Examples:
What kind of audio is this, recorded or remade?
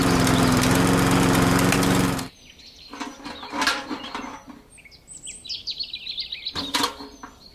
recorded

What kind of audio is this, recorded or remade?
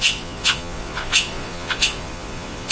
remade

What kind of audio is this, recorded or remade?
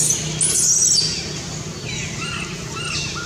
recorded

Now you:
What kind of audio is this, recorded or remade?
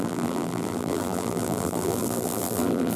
remade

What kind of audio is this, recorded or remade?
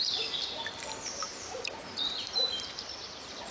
remade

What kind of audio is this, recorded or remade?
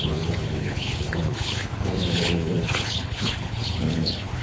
remade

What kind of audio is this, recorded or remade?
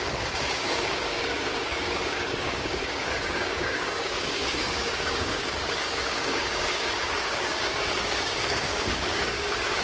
remade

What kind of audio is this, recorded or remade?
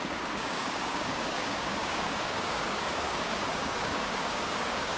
remade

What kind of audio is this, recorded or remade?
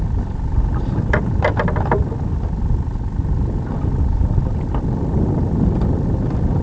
recorded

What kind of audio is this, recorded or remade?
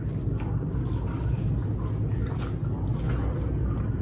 recorded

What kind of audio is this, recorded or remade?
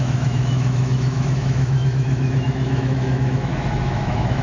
remade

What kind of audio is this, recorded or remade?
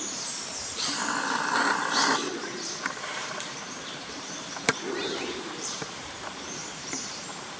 remade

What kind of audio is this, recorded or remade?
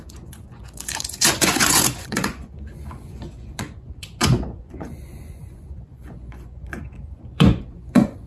remade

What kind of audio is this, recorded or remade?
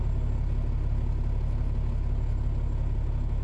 recorded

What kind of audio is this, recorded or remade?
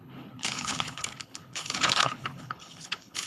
remade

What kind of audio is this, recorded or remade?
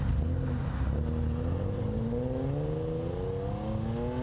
recorded